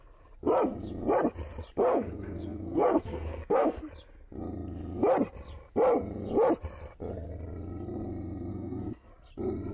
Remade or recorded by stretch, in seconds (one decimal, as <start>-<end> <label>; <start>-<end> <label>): 0.0-1.8 recorded; 1.8-3.8 remade; 3.8-8.5 recorded; 8.5-9.1 remade; 9.1-9.7 recorded